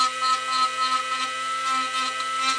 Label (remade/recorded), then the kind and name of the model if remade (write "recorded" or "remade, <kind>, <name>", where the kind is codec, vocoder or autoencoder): recorded